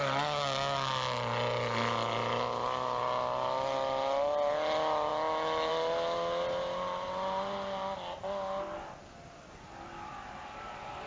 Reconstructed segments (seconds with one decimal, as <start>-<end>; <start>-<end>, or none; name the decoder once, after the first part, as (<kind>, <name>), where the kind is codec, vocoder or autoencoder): 5.1-5.7 (autoencoder, DAC-VAE)